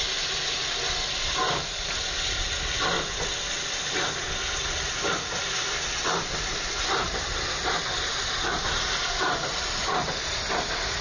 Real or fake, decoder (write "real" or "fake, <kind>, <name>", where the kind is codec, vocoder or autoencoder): real